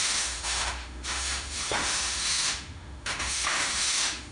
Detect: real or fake fake